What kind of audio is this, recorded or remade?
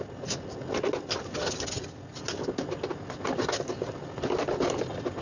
recorded